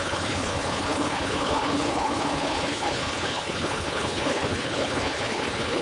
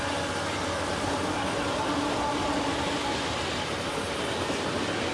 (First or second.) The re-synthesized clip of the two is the first